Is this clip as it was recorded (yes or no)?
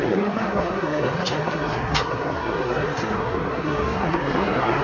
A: no